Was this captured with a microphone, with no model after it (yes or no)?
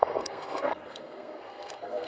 no